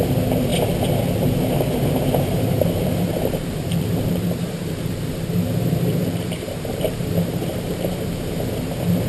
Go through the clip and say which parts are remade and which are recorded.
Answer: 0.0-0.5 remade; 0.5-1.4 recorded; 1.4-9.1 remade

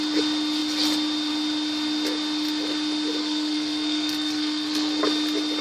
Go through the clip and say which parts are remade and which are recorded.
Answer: 0.0-3.2 recorded; 3.2-5.0 remade; 5.0-5.6 recorded

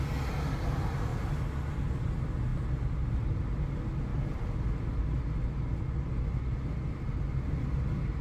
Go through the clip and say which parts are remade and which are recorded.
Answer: 0.0-1.1 recorded; 1.1-2.0 remade; 2.0-4.1 recorded; 4.1-4.8 remade; 4.8-8.2 recorded